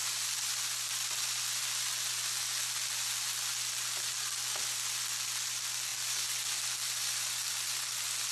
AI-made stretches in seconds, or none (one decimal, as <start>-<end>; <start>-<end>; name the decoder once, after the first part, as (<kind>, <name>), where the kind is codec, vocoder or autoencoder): none